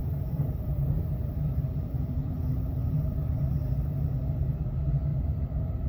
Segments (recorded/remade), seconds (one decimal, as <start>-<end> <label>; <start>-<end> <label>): 0.0-3.5 remade; 3.5-5.1 recorded; 5.1-5.9 remade